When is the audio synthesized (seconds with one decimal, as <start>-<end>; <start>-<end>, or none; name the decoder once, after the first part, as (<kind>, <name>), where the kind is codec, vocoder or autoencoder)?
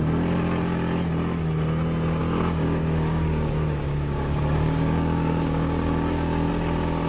2.2-6.5 (codec, DAC)